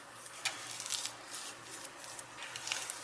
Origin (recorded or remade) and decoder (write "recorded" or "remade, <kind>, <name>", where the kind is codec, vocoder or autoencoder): recorded